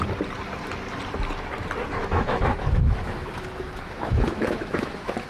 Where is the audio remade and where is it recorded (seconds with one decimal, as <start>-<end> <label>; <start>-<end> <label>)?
0.0-2.0 recorded; 2.0-5.3 remade